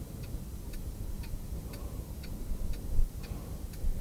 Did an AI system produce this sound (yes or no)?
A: no